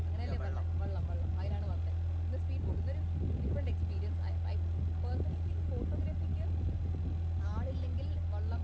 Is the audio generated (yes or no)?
no